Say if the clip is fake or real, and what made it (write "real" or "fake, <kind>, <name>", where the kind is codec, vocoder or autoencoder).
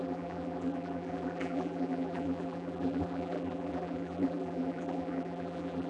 fake, vocoder, BigVGAN v2